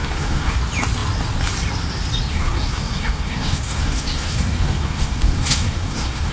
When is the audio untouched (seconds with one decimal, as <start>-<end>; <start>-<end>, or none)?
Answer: 0.6-2.3